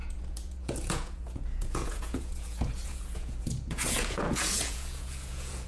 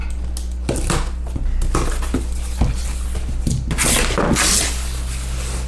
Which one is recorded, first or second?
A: second